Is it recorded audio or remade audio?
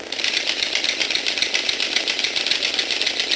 recorded